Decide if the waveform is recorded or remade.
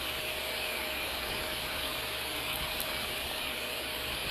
remade